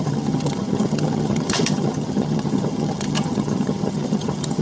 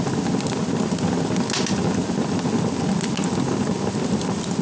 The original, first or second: second